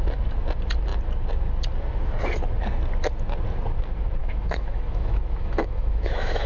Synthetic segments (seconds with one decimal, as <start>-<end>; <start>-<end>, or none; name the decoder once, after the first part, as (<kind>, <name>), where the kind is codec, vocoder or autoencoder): 4.2-6.5 (autoencoder, DAC-VAE)